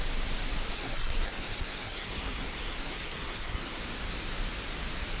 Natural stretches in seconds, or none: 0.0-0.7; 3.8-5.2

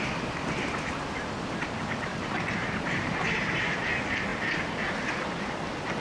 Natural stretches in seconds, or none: 0.0-2.1; 3.6-4.3; 5.4-6.0

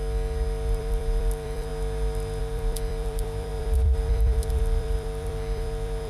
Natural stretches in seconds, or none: 0.0-0.8; 1.7-2.4

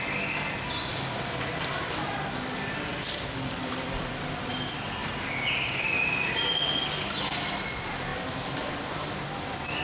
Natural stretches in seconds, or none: 0.0-0.9; 1.5-2.9; 4.5-8.1; 9.3-9.8

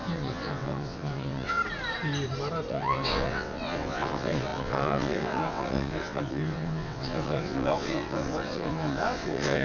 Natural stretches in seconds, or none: 1.6-2.7